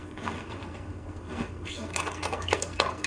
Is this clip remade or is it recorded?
remade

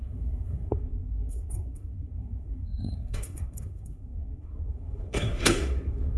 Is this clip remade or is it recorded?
remade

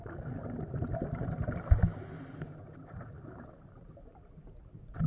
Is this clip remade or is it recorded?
recorded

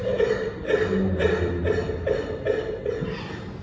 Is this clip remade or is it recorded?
recorded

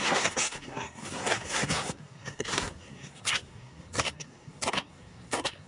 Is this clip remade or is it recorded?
remade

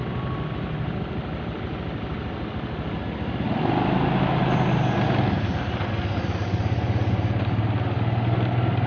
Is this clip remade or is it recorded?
recorded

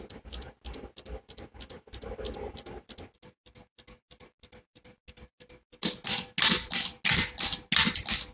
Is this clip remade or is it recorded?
recorded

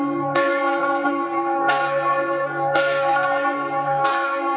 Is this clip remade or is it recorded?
remade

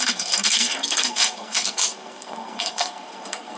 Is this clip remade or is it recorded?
remade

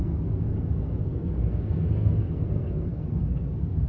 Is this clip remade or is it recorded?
remade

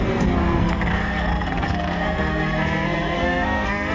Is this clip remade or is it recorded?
remade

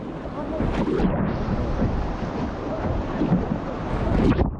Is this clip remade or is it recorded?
recorded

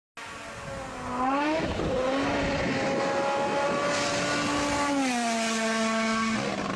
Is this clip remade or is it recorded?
recorded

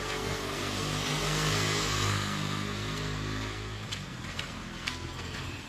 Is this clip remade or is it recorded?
remade